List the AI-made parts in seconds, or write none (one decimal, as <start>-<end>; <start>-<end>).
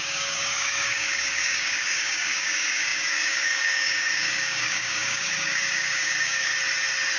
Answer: 0.0-6.5